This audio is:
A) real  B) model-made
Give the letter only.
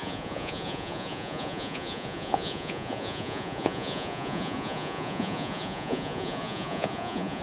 B